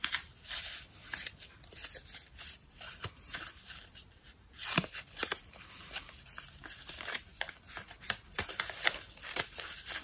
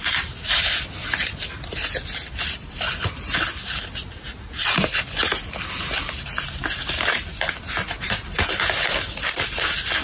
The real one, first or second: second